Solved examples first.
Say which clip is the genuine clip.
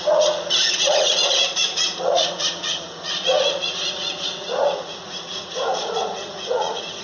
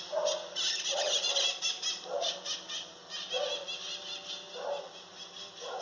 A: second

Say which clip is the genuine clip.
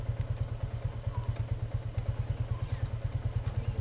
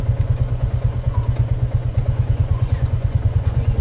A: first